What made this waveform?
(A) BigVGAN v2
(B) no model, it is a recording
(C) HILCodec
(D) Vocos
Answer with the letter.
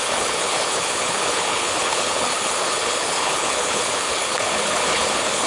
C